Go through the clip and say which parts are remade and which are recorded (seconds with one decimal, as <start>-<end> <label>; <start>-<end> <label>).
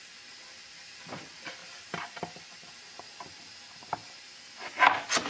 0.0-1.6 recorded; 1.6-3.0 remade; 3.0-5.3 recorded